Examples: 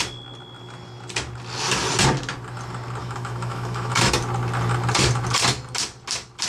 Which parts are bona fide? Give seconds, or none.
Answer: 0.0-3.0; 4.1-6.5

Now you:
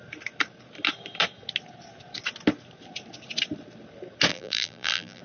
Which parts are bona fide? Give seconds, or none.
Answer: 0.0-4.3

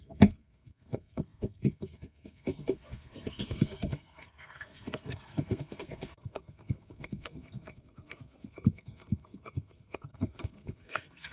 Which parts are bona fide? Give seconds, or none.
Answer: none

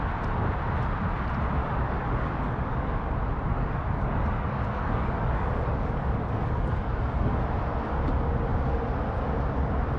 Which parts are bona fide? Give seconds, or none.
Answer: 0.0-1.6; 3.1-3.5; 7.4-10.0

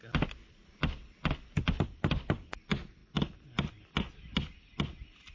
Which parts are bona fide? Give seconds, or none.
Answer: 0.0-5.3